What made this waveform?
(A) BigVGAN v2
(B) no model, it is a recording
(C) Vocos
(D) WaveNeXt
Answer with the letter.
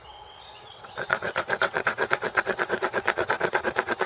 D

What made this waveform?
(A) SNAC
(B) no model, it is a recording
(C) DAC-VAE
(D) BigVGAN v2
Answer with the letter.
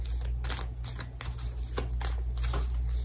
B